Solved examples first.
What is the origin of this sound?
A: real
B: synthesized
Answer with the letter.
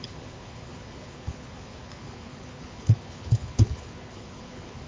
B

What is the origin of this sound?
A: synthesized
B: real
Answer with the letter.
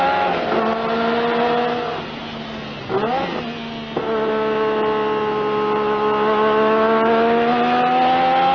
B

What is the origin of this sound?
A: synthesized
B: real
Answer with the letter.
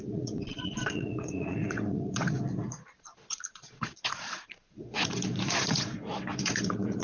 A